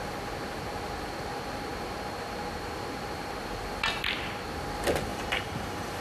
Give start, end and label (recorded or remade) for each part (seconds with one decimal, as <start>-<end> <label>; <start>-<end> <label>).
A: 0.0-5.1 recorded; 5.1-6.0 remade

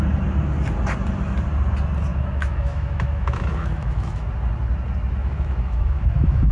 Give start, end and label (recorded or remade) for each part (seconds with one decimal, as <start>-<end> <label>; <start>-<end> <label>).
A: 0.0-2.1 recorded; 2.1-4.3 remade; 4.3-5.2 recorded; 5.2-6.5 remade

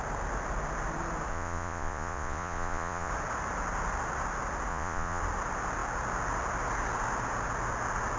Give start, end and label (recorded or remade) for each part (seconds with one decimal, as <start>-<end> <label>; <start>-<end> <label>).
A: 0.0-1.3 recorded; 1.3-3.1 remade; 3.1-4.7 recorded; 4.7-5.2 remade; 5.2-8.2 recorded

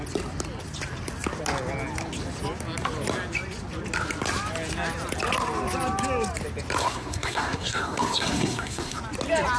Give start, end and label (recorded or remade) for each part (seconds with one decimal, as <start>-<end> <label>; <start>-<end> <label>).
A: 0.0-6.8 recorded; 6.8-9.0 remade; 9.0-9.6 recorded

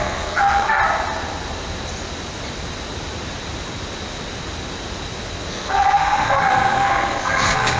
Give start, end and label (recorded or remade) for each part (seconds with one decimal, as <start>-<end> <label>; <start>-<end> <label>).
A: 0.0-0.8 remade; 0.8-5.5 recorded; 5.5-7.8 remade

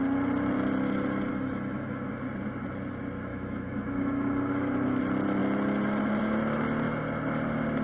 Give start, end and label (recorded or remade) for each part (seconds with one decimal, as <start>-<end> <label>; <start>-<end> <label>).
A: 0.0-1.3 recorded; 1.3-2.1 remade; 2.1-3.3 recorded; 3.3-5.0 remade; 5.0-7.8 recorded